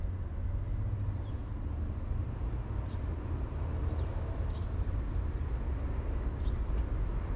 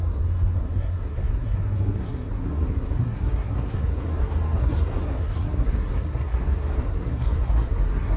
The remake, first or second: second